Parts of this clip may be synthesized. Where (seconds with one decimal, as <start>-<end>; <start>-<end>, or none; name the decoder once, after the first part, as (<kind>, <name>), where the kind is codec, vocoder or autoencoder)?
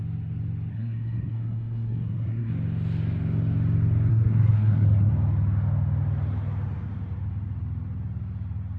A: 0.7-2.5 (codec, SNAC); 4.1-5.1